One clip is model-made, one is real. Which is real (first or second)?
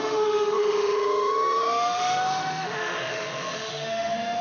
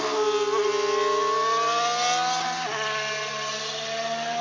second